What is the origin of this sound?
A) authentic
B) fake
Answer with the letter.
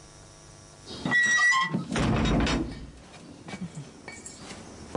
A